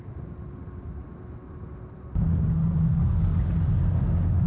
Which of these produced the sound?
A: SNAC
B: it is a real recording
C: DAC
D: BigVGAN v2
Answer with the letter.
B